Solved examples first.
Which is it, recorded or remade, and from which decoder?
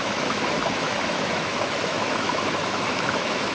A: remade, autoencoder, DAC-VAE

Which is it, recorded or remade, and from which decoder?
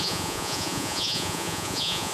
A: remade, vocoder, Vocos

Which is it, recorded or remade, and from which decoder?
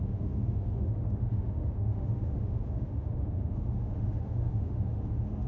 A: remade, autoencoder, DAC-VAE